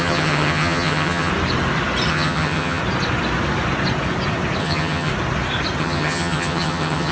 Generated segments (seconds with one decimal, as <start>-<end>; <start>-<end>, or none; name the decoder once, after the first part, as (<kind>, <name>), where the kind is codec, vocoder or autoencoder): 0.0-1.3 (vocoder, HiFi-GAN); 2.1-2.8; 4.6-5.1; 5.8-7.1